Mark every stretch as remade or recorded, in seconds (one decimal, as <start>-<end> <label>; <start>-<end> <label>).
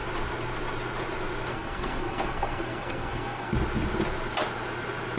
0.0-1.5 recorded; 1.5-3.5 remade; 3.5-5.2 recorded